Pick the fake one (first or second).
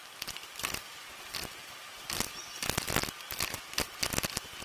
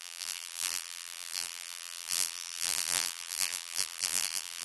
second